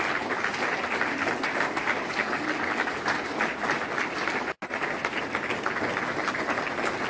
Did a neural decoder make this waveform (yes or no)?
no